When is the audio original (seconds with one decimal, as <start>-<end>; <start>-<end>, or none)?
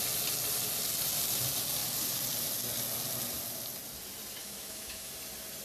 0.0-4.4; 5.1-5.6